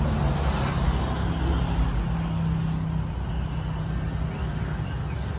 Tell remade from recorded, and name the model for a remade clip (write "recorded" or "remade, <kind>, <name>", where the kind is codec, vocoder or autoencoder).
recorded